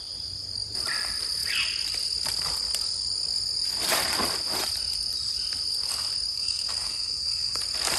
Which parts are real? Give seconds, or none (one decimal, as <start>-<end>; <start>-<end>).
0.0-6.3; 7.6-8.0

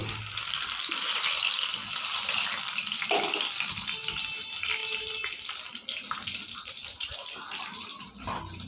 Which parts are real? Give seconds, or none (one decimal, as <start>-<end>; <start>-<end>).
0.0-8.7

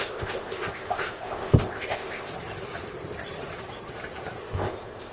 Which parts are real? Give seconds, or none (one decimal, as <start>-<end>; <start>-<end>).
2.3-4.4

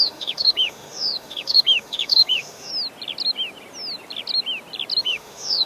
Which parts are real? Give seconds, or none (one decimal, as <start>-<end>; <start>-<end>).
2.7-5.0